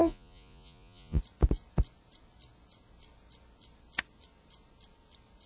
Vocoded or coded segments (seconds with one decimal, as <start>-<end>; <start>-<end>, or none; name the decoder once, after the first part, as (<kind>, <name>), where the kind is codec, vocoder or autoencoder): 0.0-1.2 (vocoder, Vocos)